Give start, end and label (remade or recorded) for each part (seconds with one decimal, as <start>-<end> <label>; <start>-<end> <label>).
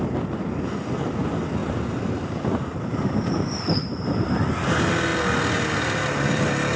0.0-1.6 recorded; 1.6-4.3 remade; 4.3-6.8 recorded